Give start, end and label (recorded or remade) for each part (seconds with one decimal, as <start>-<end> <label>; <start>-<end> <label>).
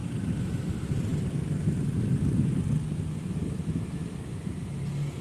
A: 0.0-0.7 remade; 0.7-3.4 recorded; 3.4-4.1 remade; 4.1-5.2 recorded